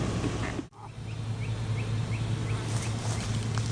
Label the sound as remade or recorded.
recorded